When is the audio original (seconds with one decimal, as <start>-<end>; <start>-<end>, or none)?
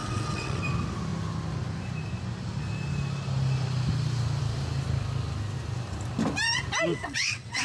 0.6-6.9